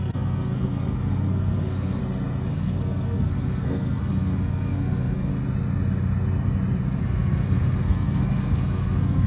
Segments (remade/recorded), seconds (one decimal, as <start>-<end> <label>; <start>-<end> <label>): 0.0-2.0 remade; 2.0-2.5 recorded; 2.5-5.3 remade; 5.3-7.0 recorded; 7.0-9.3 remade